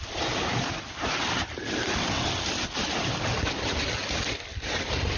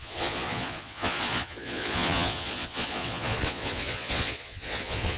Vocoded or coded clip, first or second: second